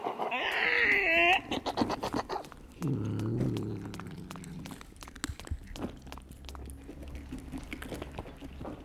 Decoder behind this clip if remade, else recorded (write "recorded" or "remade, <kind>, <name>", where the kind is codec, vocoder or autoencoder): recorded